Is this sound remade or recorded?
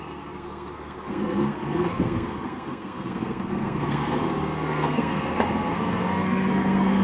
remade